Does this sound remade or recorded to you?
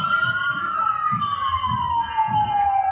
recorded